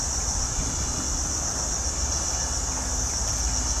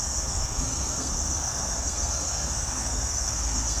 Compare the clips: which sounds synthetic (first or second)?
second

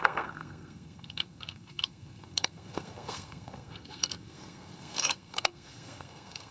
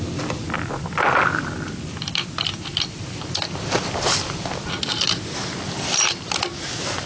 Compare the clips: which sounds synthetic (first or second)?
first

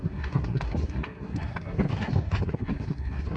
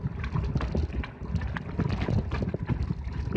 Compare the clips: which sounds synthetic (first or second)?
first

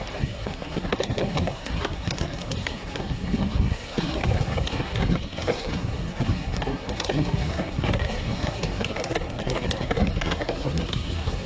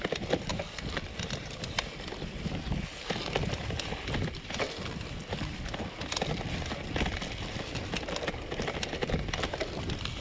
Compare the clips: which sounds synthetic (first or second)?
first